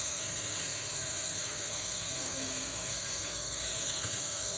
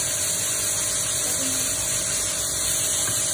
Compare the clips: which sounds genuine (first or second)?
second